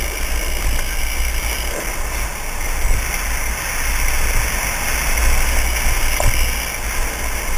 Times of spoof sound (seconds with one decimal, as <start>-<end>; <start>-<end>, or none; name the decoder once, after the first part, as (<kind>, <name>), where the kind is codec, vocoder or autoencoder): none